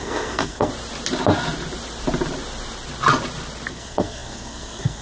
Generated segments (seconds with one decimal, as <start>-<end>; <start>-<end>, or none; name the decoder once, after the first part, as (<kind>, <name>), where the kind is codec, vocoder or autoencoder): 0.0-0.7 (codec, SNAC); 3.7-5.0